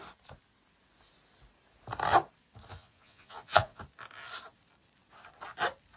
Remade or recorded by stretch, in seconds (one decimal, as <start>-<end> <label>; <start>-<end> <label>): 0.0-2.7 recorded; 2.7-3.8 remade; 3.8-6.0 recorded